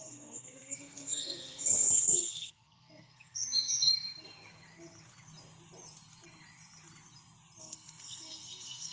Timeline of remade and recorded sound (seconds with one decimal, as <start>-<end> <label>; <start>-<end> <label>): 0.0-3.9 remade; 3.9-7.6 recorded; 7.6-8.9 remade